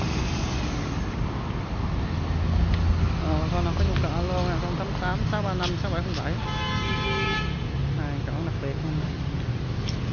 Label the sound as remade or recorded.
recorded